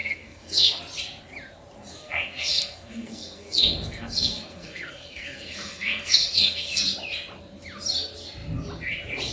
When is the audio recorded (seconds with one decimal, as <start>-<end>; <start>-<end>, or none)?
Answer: 0.8-1.9; 6.8-9.3